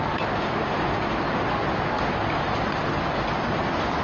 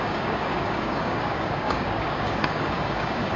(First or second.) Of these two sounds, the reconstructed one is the second